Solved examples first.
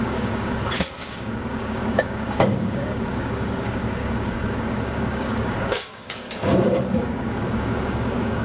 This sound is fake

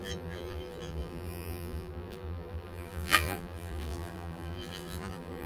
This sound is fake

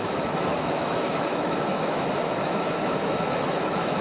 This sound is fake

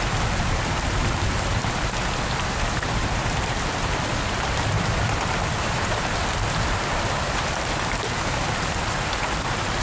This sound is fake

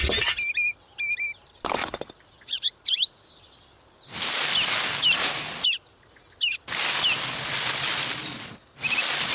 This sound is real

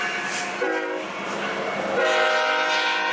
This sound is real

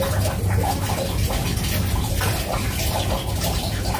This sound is real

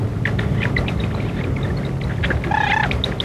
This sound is real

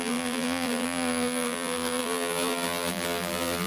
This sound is fake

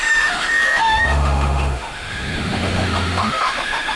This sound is fake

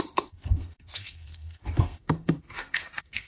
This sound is fake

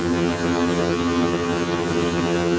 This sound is fake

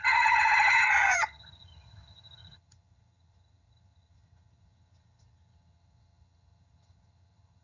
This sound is fake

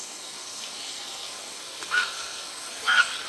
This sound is fake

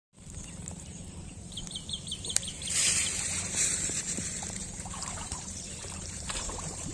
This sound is fake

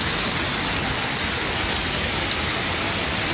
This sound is real